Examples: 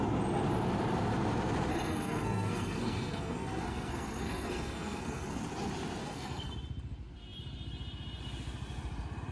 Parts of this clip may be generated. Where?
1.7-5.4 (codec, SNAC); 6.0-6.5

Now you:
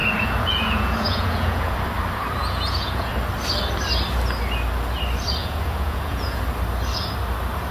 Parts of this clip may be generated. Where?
0.0-1.7 (vocoder, Vocos); 2.4-3.1; 5.4-6.4